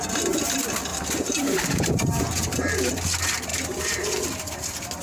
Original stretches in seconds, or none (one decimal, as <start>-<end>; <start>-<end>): 0.0-0.9; 2.9-3.5; 4.5-5.0